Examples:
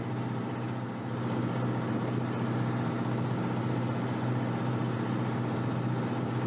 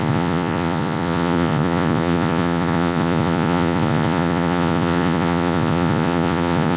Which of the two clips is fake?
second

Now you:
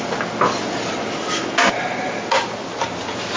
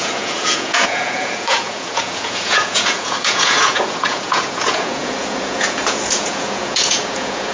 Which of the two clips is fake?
second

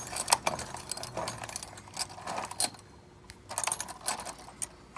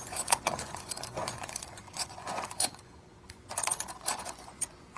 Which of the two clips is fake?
second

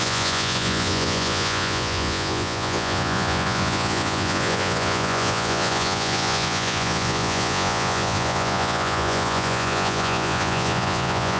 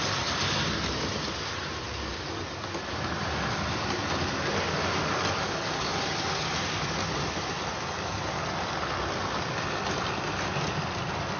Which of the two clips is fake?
first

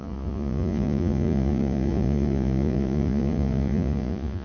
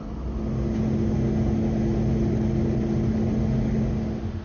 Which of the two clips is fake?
first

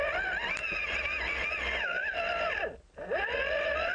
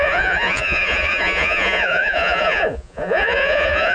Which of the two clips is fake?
second